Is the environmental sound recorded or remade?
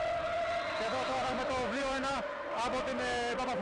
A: recorded